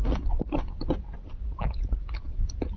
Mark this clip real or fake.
real